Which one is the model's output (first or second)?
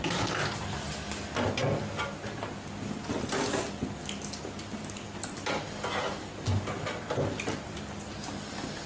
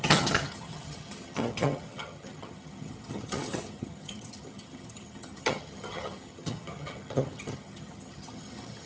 second